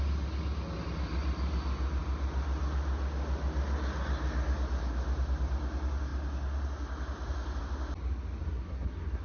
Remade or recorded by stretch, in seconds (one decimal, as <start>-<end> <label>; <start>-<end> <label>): 0.0-8.4 recorded; 8.4-9.2 remade